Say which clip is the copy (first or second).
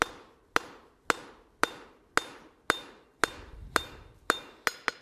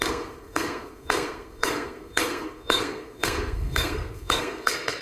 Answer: second